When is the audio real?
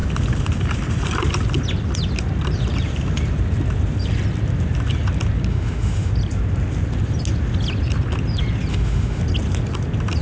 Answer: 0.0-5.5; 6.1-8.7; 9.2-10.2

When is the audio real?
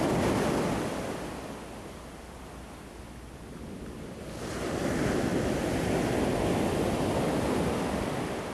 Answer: 0.0-8.5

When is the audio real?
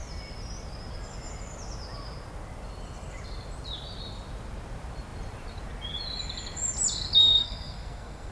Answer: 0.0-7.2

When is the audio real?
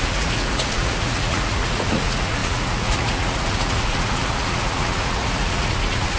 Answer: none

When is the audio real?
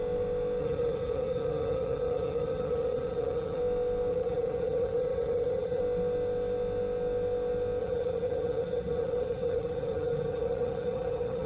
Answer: 0.0-0.6; 3.6-4.1; 5.8-7.8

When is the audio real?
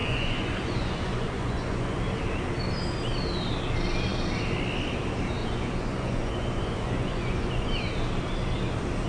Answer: 2.0-5.4; 7.7-9.1